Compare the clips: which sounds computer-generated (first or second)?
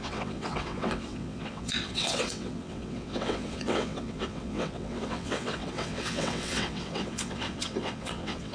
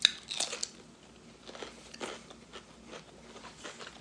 first